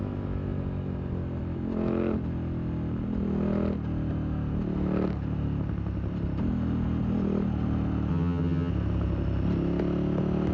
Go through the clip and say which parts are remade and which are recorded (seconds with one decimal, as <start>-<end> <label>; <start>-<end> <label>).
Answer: 0.0-8.1 recorded; 8.1-8.7 remade; 8.7-10.5 recorded